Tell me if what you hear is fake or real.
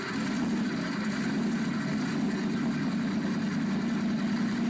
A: real